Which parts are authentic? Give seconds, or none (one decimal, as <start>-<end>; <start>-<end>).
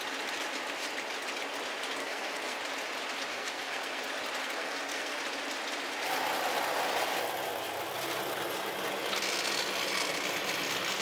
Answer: 0.0-2.0; 2.6-3.3; 4.0-4.4; 5.2-11.0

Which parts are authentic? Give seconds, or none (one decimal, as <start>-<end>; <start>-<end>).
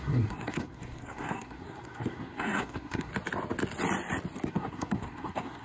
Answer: 3.1-4.5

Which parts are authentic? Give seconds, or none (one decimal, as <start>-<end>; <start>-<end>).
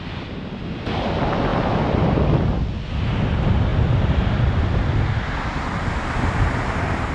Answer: 0.0-7.1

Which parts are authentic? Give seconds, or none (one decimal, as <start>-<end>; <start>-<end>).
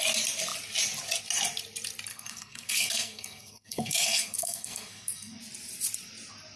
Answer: 0.0-2.1; 5.4-6.6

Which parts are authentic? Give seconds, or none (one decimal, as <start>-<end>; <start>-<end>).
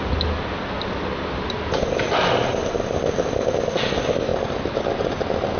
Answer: 0.0-5.6